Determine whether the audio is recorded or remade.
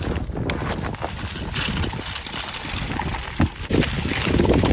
recorded